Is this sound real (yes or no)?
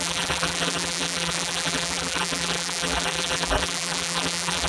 no